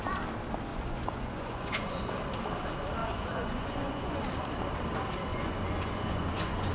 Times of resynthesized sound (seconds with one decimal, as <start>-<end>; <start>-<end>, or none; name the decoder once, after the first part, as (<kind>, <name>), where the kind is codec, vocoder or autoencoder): 0.7-2.1 (vocoder, Vocos); 3.0-4.2; 5.3-6.7